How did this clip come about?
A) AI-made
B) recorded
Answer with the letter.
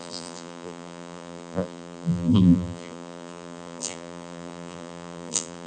A